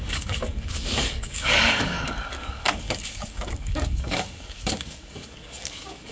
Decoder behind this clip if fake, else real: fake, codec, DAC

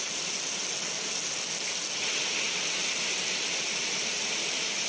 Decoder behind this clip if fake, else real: real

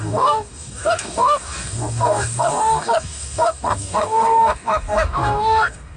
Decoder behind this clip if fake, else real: fake, codec, DAC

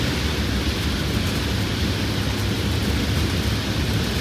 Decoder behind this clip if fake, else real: real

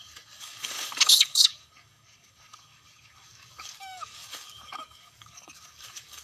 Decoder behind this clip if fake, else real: fake, codec, DAC